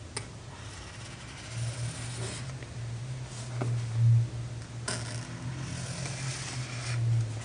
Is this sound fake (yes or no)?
no